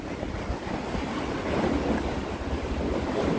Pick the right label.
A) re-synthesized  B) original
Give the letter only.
B